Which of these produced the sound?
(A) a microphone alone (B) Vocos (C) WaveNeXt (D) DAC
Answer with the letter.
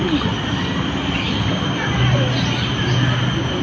A